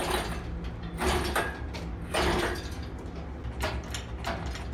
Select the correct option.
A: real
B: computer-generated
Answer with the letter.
A